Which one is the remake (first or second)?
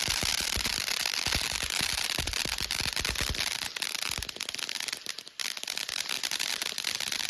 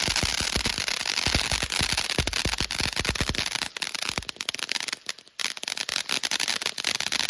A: first